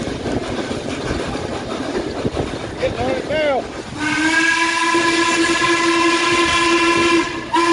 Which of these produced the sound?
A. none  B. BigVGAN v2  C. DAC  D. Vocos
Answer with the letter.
A